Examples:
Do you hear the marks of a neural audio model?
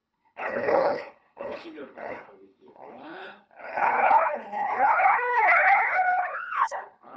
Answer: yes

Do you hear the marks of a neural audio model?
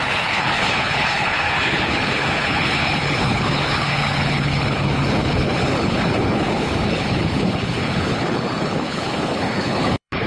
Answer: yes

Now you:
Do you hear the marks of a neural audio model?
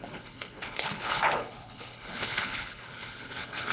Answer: yes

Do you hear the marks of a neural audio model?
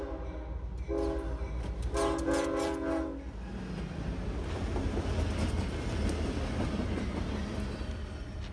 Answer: no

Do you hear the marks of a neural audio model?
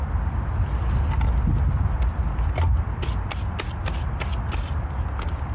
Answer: no